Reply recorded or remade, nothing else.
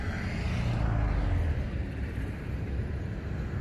recorded